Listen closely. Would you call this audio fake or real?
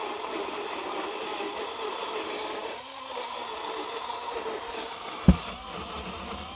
real